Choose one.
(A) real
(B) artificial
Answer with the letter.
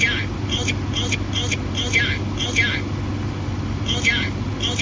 A